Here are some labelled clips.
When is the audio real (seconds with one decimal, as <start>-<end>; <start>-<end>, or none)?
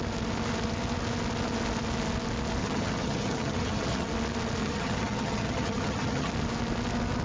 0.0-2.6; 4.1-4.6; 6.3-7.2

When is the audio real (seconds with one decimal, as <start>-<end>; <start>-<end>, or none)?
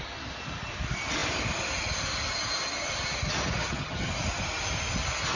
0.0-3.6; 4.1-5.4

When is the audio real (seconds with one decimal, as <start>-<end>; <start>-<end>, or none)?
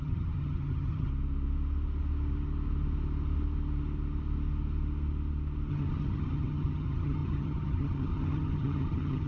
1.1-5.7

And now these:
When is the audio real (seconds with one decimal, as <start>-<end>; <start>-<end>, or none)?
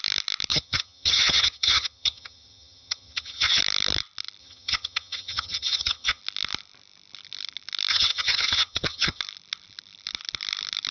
0.0-0.5; 3.6-4.4; 6.2-7.9; 9.2-10.9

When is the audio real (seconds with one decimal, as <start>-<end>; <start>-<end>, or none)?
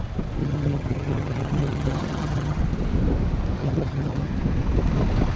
0.0-0.4; 2.6-3.6; 4.3-5.4